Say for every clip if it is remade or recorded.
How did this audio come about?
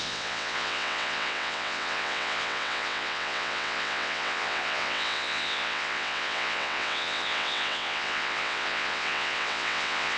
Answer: remade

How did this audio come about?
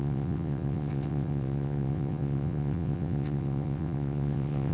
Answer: remade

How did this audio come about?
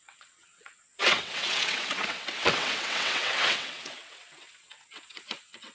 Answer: remade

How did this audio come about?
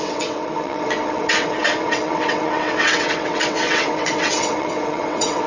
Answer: remade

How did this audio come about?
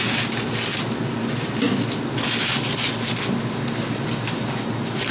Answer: recorded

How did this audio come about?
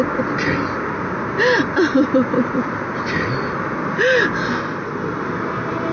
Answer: recorded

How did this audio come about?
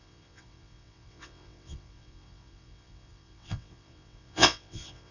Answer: remade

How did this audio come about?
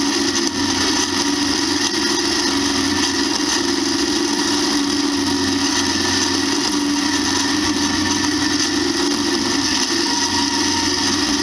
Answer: recorded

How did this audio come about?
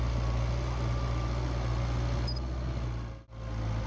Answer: recorded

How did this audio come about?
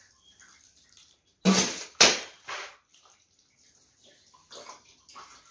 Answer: recorded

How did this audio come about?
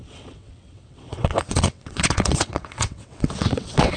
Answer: remade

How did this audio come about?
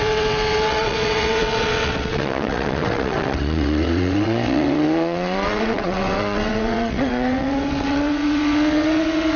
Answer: remade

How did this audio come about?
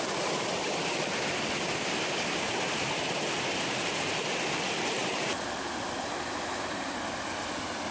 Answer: recorded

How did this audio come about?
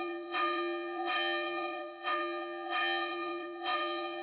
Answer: remade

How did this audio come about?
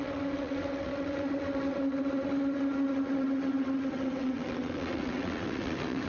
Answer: remade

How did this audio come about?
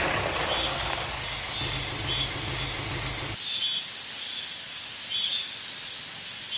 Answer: recorded